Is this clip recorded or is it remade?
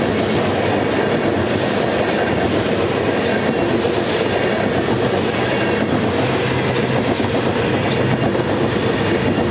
recorded